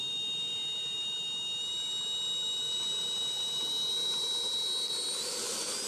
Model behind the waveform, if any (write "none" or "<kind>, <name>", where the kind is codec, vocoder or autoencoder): none